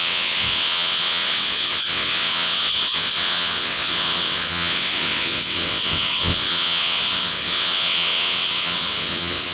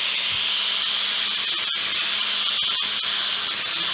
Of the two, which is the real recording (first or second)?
second